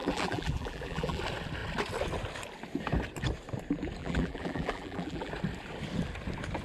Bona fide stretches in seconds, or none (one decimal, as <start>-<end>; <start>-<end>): 1.2-4.0; 5.3-6.6